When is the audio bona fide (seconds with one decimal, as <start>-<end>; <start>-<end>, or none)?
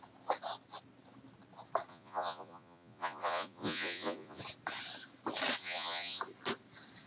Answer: 0.0-1.9; 4.4-5.6; 6.2-7.1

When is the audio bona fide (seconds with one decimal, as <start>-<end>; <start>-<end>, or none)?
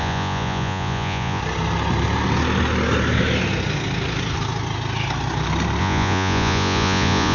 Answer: 1.4-5.8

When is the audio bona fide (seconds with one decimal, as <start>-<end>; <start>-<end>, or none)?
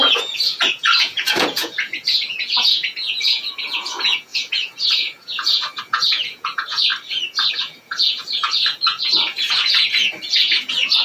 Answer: 6.9-7.5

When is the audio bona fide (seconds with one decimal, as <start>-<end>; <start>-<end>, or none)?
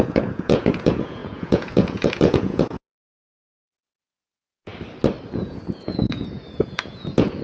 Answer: 4.7-5.3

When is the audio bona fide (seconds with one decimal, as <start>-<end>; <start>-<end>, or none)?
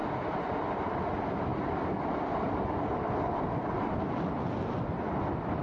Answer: 0.0-5.6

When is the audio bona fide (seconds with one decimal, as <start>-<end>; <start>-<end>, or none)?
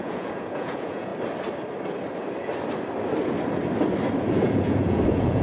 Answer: 1.1-4.3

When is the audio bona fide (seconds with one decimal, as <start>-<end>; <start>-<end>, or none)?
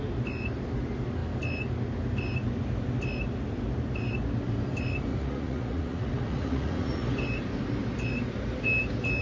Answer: 0.0-5.1; 7.1-9.2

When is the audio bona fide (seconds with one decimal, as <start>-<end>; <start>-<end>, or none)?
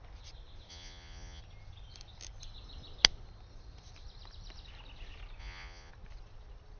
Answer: 0.0-0.7; 1.4-5.4; 5.9-6.8